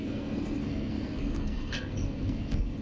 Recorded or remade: remade